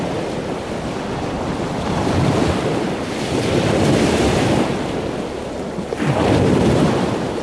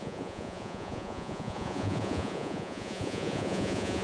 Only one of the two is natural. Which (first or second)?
first